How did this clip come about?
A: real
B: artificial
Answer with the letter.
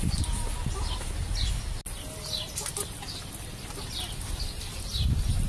A